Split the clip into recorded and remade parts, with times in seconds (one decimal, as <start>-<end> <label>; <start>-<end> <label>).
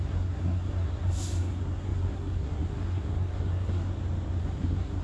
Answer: 0.0-3.9 remade; 3.9-4.4 recorded; 4.4-5.0 remade